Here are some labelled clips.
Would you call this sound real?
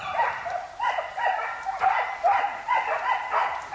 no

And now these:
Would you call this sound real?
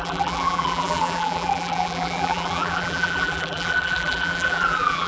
no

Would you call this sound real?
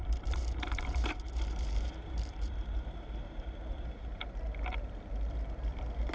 no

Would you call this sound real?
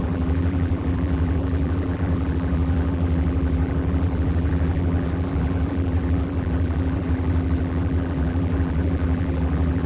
no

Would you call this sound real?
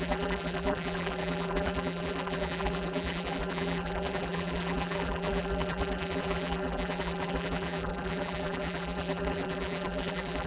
no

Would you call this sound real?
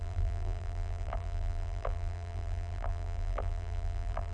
no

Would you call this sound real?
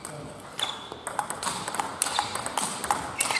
yes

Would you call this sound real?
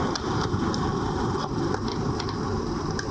no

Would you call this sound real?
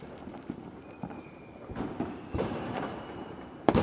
no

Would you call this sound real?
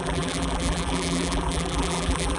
no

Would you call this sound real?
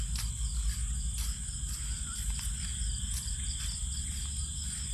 yes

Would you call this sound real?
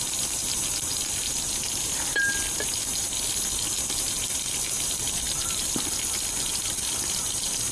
yes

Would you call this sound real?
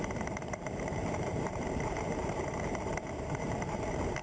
no